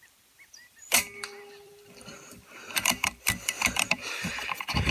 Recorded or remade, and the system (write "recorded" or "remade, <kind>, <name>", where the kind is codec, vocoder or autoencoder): remade, vocoder, BigVGAN v2